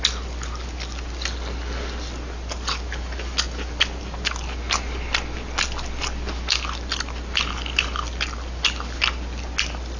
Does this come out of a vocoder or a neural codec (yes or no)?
no